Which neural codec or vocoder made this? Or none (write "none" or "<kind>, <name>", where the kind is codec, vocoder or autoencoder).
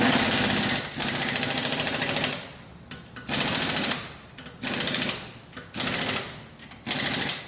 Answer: none